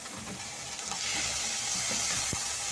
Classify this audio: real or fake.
real